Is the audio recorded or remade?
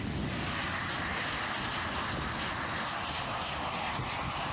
recorded